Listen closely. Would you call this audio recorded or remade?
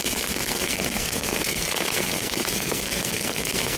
remade